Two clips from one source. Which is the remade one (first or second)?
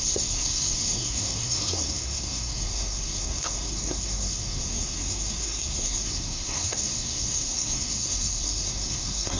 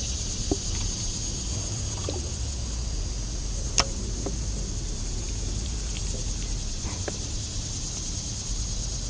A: first